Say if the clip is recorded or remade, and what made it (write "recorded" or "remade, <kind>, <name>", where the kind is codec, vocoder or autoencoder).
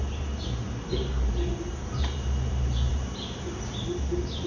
remade, vocoder, BigVGAN v2